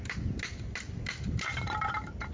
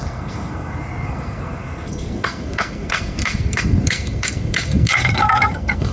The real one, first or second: first